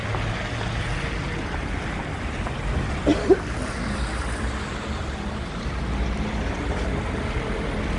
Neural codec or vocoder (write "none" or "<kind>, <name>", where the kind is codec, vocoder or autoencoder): none